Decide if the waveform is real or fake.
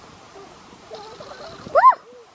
real